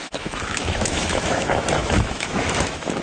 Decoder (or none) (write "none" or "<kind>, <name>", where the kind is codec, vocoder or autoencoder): autoencoder, DAC-VAE